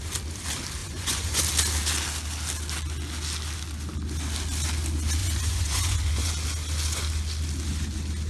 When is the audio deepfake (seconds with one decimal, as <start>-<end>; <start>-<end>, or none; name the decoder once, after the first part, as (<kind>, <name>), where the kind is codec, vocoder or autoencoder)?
0.8-1.4 (vocoder, Vocos); 5.2-6.3